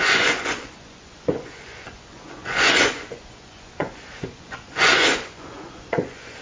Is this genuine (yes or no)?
no